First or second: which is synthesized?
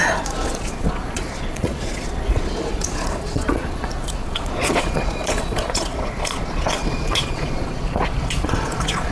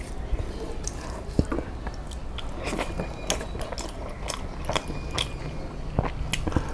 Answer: first